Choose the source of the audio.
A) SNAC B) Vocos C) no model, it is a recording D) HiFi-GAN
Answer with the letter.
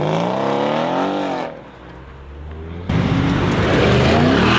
C